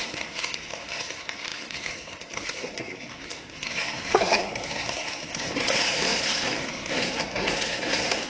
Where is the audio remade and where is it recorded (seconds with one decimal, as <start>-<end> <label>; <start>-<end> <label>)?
0.0-8.3 remade